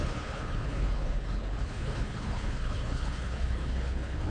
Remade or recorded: remade